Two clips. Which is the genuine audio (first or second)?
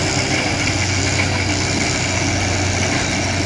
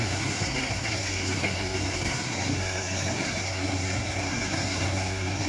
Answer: first